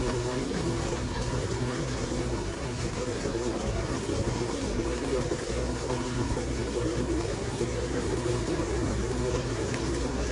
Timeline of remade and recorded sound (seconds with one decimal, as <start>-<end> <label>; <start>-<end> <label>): 0.0-10.3 remade

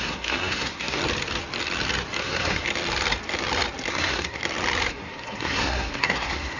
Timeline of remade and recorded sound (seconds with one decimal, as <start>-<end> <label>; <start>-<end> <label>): 0.0-1.0 remade; 1.0-2.2 recorded; 2.2-2.7 remade; 2.7-3.9 recorded; 3.9-4.4 remade; 4.4-4.9 recorded; 4.9-6.6 remade

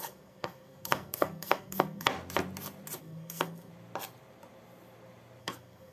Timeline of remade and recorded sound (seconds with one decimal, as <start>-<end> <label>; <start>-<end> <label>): 0.0-2.1 remade; 2.1-3.0 recorded; 3.0-3.7 remade; 3.7-5.4 recorded; 5.4-5.9 remade

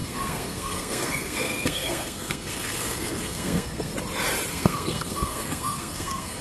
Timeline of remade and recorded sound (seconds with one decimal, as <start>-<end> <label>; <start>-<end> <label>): 0.0-3.9 remade; 3.9-4.5 recorded; 4.5-6.4 remade

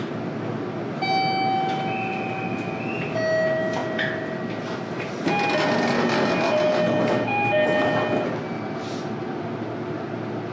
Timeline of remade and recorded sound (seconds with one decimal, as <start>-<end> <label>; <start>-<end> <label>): 0.0-10.5 recorded